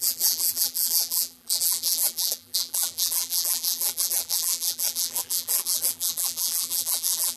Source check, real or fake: fake